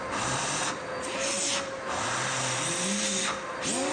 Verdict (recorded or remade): recorded